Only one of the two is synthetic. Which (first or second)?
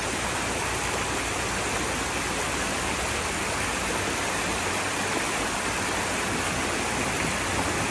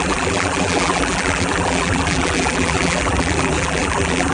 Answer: second